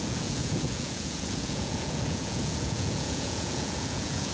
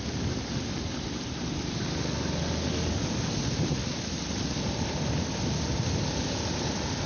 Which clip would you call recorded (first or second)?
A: second